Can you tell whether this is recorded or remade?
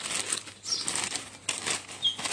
recorded